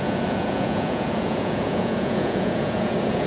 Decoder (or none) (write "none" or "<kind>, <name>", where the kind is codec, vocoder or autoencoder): vocoder, Vocos